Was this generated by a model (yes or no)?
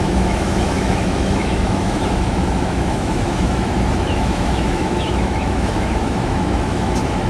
yes